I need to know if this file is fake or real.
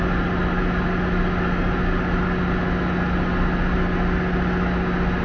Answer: real